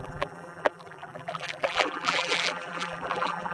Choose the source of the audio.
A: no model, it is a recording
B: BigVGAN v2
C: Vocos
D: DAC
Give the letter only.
B